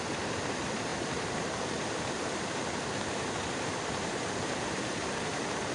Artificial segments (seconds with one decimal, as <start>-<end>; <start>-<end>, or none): 0.0-5.7